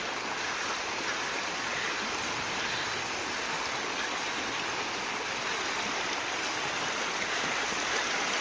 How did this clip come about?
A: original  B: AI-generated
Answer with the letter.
A